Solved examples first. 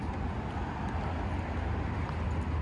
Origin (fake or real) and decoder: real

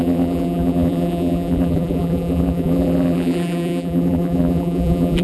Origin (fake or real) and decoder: fake, vocoder, BigVGAN v2